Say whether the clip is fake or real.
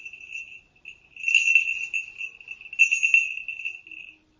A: real